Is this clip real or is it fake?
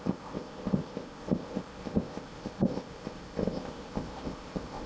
fake